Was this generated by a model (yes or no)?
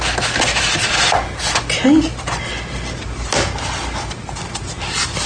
no